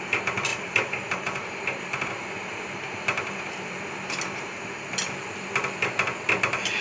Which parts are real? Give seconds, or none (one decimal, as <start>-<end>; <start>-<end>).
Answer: 0.0-0.5; 4.6-6.8